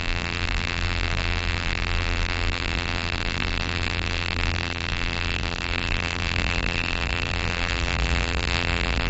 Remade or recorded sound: remade